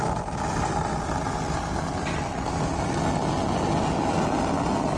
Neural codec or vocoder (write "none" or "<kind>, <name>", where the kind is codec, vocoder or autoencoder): none